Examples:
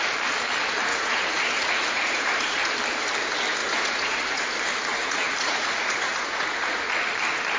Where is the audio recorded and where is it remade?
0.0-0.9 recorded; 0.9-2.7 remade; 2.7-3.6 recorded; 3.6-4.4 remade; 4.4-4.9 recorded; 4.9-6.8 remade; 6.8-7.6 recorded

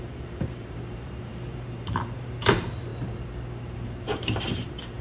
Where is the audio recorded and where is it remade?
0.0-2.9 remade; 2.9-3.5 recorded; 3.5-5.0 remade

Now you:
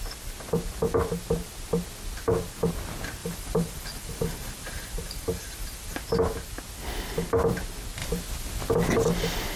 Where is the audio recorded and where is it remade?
0.0-3.2 recorded; 3.2-6.0 remade; 6.0-9.6 recorded

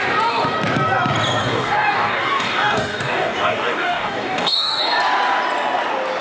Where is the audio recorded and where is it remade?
0.0-1.4 recorded; 1.4-4.8 remade; 4.8-6.2 recorded